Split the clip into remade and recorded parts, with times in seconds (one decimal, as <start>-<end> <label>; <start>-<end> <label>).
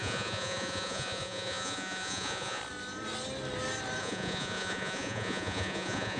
0.0-2.6 remade; 2.6-4.0 recorded; 4.0-6.2 remade